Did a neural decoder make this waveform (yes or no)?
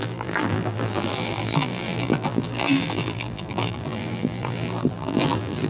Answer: yes